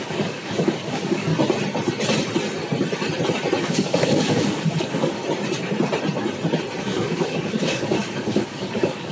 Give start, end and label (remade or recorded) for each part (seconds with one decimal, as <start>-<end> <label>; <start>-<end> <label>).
0.0-1.3 remade; 1.3-3.6 recorded; 3.6-5.2 remade; 5.2-6.8 recorded; 6.8-9.1 remade